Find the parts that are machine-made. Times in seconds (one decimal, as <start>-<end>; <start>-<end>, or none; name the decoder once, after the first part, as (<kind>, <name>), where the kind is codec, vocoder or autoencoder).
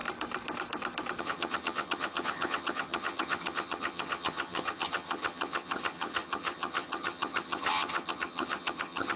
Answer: 1.2-9.2 (vocoder, HiFi-GAN)